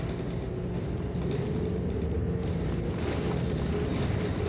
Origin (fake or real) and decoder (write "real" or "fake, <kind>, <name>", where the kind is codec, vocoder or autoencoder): real